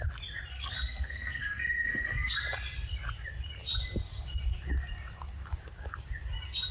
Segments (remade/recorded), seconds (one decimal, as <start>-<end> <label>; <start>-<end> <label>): 0.0-0.5 recorded; 0.5-2.4 remade; 2.4-6.7 recorded